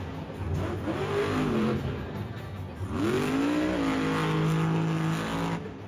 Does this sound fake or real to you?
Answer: real